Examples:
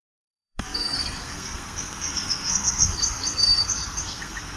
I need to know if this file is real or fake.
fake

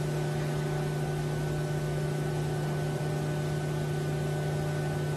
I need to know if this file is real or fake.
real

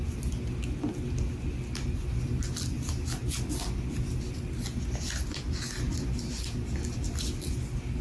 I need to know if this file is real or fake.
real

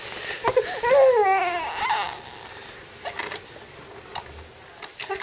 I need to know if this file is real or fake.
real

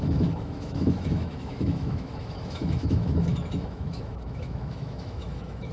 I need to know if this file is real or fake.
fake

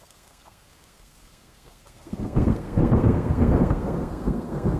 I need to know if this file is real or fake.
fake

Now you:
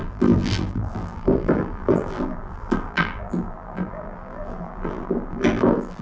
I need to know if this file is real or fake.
fake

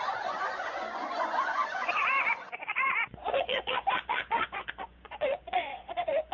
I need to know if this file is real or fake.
fake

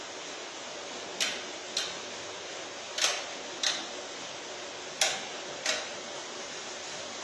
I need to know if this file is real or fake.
real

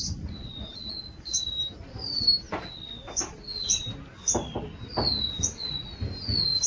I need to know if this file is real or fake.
real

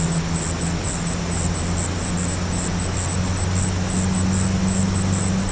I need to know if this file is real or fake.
real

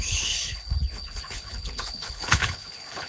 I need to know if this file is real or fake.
fake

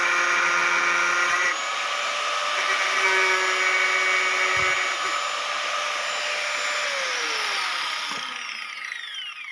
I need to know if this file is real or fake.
real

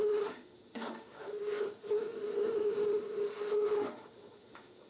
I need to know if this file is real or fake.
fake